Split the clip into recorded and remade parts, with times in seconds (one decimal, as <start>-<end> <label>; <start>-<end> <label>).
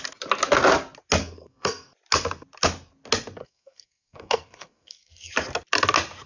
0.0-1.2 recorded; 1.2-1.9 remade; 1.9-3.4 recorded; 3.4-5.3 remade; 5.3-6.3 recorded